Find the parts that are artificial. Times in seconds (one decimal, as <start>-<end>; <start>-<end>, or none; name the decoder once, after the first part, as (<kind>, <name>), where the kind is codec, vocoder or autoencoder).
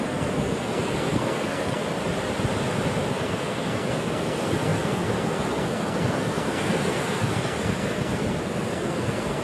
0.0-1.8 (codec, SNAC); 3.1-9.4